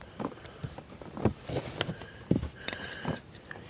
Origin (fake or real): fake